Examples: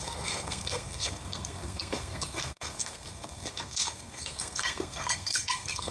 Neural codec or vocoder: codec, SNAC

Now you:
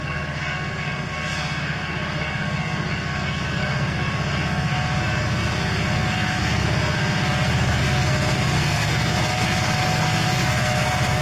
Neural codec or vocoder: codec, SNAC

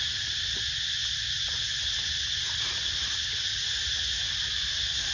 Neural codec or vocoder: none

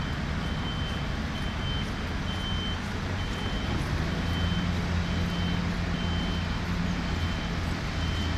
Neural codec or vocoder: none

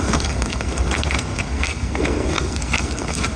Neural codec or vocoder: codec, SNAC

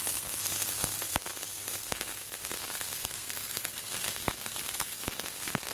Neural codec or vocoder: codec, SNAC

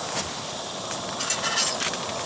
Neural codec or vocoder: none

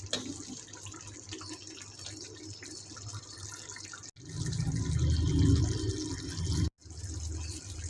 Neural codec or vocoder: none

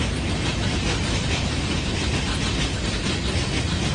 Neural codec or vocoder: none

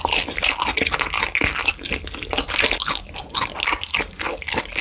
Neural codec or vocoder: none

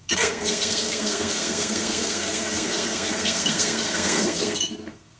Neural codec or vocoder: codec, SNAC